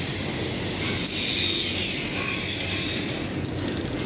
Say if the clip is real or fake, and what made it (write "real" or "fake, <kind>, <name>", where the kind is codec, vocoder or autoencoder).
real